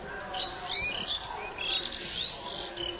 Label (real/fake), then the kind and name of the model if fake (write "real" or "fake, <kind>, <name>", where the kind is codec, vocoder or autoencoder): real